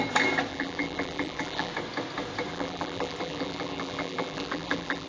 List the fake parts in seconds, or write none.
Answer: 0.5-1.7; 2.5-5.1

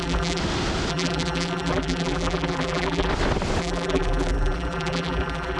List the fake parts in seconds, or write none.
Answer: 0.0-0.4; 0.9-3.1; 3.6-5.6